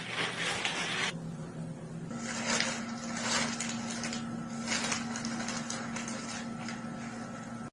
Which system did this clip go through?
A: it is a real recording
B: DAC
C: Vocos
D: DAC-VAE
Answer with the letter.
A